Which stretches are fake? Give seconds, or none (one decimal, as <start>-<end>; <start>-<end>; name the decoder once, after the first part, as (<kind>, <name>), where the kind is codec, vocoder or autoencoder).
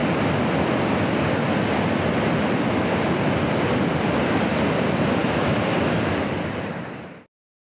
none